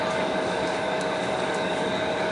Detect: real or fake fake